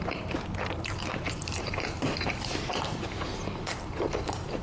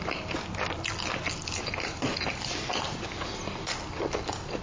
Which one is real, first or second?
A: second